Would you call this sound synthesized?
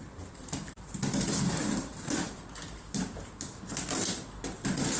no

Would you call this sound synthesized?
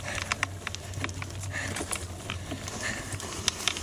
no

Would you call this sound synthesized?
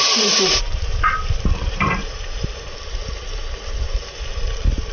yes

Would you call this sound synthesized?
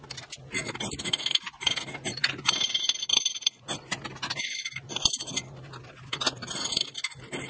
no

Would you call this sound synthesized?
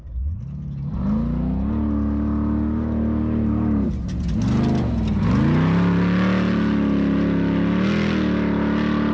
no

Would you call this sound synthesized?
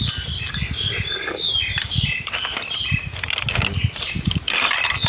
no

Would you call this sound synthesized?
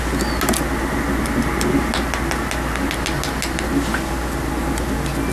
no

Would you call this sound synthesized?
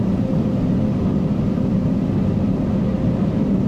no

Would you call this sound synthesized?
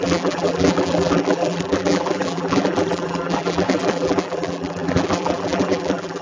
yes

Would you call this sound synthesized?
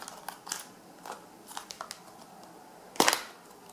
no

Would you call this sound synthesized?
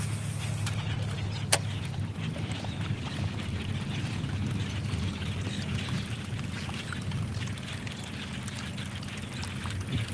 no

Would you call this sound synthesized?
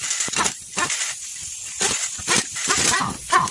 yes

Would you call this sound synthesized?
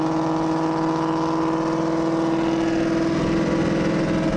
no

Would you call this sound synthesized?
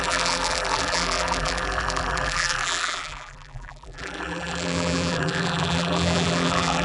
yes